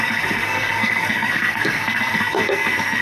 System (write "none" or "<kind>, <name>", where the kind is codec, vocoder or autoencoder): codec, SNAC